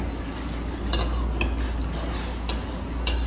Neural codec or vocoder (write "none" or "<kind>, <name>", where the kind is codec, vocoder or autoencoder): none